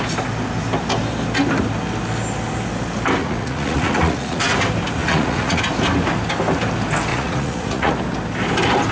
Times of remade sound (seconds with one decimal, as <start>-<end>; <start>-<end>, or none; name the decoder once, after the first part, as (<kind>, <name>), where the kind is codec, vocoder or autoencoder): 3.2-4.4 (vocoder, Vocos); 5.0-5.6; 7.1-7.9